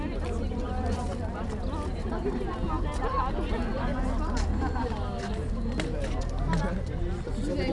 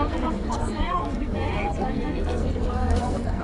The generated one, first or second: second